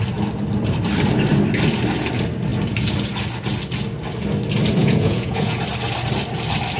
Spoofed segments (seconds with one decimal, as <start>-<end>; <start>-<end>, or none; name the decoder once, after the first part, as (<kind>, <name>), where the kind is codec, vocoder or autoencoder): 4.8-5.6 (vocoder, Vocos)